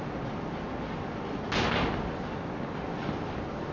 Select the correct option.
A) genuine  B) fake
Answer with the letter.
A